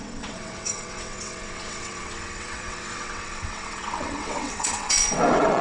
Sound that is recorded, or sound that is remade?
remade